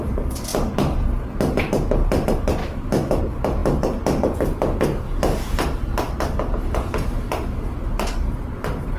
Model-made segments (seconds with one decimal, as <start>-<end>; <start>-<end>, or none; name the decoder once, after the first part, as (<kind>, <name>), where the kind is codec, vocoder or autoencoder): 2.6-3.2 (autoencoder, DAC-VAE)